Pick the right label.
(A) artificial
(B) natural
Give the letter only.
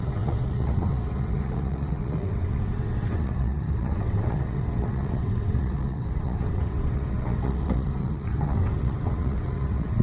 A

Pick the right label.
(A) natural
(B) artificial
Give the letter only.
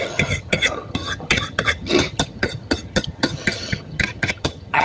B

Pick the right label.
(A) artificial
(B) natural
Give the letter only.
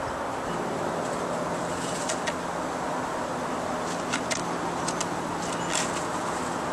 B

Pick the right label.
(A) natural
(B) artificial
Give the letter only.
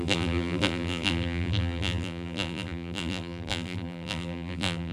B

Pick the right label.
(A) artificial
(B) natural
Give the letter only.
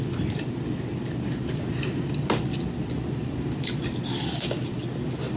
B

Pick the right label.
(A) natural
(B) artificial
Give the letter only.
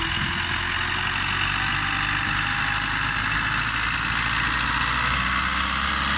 A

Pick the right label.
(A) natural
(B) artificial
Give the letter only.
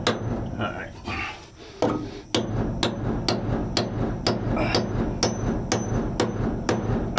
A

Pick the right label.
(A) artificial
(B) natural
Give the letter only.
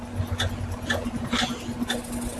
B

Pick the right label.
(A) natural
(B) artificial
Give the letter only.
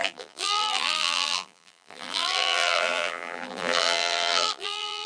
B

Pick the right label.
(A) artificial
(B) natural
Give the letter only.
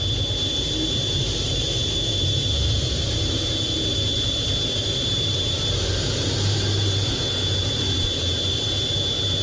B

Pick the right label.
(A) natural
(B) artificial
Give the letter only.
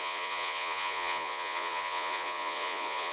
B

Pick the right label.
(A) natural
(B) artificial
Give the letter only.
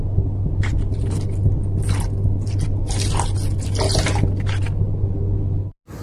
A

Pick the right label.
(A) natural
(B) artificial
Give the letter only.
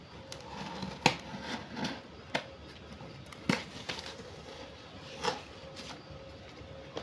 A